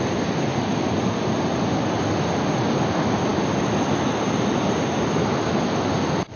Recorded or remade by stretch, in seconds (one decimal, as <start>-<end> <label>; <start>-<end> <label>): 0.0-6.4 recorded